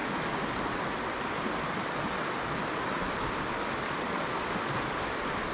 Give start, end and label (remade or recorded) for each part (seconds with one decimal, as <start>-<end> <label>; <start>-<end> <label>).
0.0-5.5 recorded